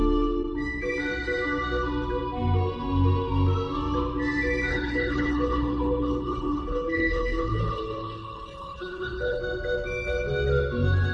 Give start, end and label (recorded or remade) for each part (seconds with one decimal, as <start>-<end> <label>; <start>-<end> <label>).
0.0-4.7 recorded; 4.7-9.4 remade; 9.4-11.1 recorded